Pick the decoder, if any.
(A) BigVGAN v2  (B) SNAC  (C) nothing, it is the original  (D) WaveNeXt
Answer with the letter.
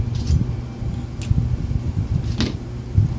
C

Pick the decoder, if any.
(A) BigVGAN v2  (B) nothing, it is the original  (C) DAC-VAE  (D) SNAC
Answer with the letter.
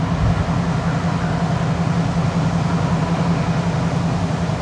B